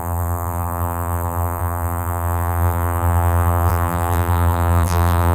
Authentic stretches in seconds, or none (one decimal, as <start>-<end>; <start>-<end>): none